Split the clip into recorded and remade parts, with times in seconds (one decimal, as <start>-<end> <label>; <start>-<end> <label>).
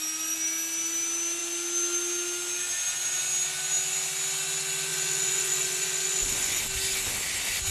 0.0-4.9 recorded; 4.9-6.6 remade; 6.6-7.7 recorded